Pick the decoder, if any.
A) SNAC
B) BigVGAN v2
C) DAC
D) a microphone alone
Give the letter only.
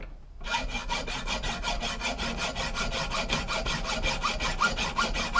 D